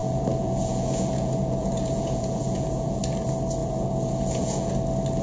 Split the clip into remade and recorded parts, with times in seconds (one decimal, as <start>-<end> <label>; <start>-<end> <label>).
0.0-3.0 remade; 3.0-3.6 recorded; 3.6-4.7 remade; 4.7-5.2 recorded

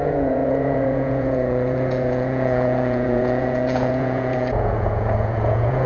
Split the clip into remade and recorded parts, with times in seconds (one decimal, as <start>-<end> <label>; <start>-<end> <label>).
0.0-5.9 remade

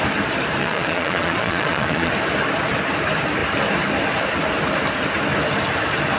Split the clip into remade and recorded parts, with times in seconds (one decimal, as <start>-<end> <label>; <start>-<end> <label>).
0.0-0.6 recorded; 0.6-2.1 remade; 2.1-6.2 recorded

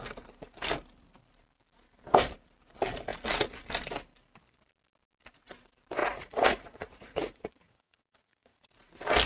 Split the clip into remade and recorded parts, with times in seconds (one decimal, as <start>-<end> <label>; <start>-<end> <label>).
0.0-6.0 recorded; 6.0-8.7 remade; 8.7-9.3 recorded